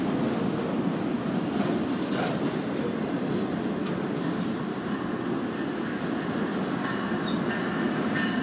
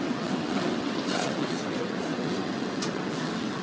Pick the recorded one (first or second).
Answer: first